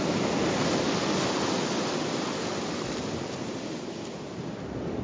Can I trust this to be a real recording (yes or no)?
yes